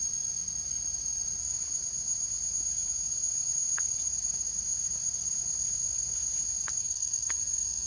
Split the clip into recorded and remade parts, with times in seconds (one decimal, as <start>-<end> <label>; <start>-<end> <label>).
0.0-6.8 recorded; 6.8-7.9 remade